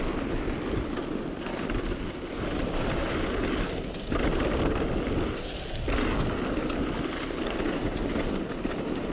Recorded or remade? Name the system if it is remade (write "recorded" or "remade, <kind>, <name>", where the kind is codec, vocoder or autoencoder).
recorded